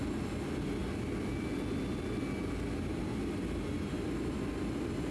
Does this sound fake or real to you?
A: real